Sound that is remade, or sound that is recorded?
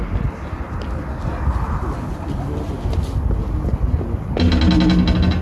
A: recorded